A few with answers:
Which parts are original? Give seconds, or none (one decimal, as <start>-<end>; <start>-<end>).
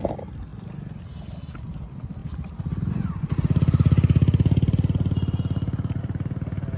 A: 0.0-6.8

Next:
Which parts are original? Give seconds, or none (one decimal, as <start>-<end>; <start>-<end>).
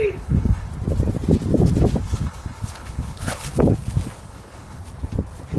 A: 0.7-2.0; 3.5-4.2; 4.8-5.6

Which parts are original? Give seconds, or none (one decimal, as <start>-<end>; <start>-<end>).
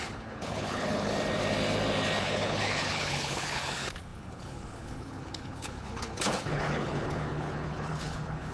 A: 1.1-2.2